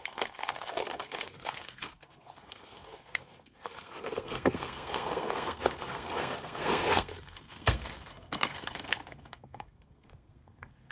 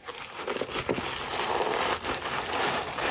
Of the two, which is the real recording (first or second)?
second